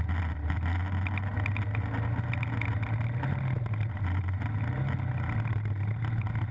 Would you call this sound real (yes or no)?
yes